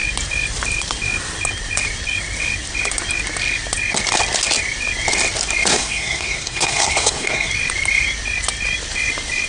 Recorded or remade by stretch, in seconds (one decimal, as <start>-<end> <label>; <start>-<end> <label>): 0.0-5.7 recorded; 5.7-7.5 remade; 7.5-9.5 recorded